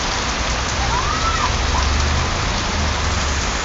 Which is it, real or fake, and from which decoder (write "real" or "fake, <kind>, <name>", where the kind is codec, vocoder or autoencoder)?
real